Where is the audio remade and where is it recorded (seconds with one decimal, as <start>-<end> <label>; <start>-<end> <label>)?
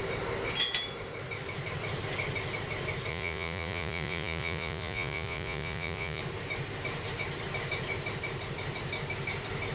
0.0-3.1 recorded; 3.1-6.2 remade; 6.2-9.7 recorded